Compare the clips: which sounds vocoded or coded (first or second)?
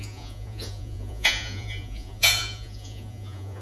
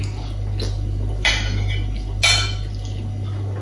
first